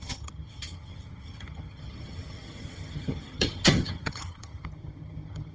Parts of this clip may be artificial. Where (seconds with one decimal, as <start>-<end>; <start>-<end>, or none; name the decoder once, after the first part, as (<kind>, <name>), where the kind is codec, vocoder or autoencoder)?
0.0-5.5 (vocoder, HiFi-GAN)